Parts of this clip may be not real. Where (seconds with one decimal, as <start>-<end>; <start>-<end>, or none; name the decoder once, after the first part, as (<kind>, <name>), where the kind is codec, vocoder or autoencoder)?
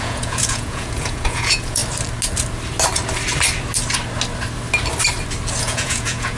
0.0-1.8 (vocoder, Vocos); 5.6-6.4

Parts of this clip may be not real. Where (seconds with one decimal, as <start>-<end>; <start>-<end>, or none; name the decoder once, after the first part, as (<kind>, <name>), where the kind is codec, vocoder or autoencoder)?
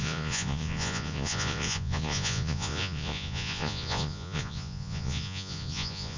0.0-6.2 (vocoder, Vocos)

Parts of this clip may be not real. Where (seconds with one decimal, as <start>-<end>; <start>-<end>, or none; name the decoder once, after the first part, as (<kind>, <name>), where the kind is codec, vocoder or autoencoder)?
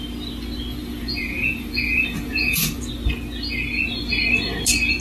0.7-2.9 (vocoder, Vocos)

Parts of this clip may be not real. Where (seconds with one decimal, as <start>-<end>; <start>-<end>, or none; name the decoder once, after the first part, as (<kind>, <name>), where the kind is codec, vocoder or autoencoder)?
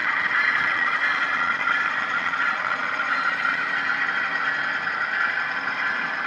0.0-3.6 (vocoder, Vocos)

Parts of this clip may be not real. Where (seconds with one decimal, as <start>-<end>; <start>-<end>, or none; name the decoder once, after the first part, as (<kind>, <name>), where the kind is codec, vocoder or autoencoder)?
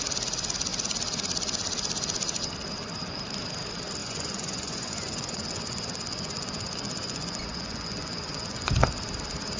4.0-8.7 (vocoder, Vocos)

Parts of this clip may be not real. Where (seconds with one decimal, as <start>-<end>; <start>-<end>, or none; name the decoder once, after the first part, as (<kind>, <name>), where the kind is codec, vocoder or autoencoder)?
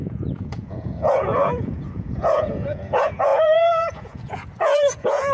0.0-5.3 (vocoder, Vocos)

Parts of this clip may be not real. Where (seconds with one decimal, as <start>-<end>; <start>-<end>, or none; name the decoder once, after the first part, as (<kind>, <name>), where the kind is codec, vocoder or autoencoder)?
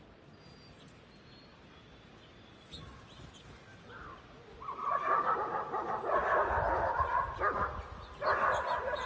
none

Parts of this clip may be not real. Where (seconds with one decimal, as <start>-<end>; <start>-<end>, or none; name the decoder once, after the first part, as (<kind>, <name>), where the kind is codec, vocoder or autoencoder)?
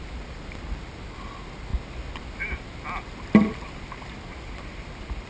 none